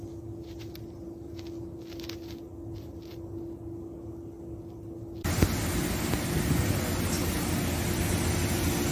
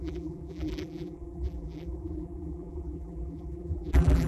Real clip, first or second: first